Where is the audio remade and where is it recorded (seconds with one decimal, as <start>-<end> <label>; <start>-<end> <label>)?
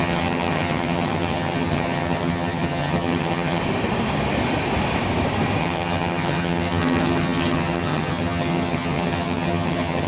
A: 0.0-3.6 remade; 3.6-5.6 recorded; 5.6-10.1 remade